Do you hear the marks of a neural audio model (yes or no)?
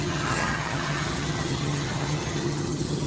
yes